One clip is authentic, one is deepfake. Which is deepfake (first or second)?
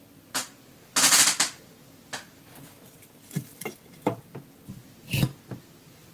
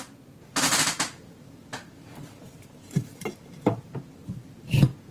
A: second